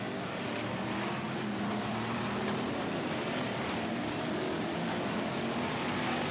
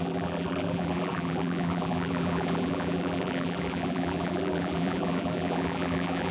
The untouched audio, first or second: first